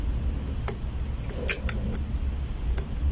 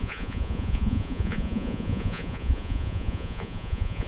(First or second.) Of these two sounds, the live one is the first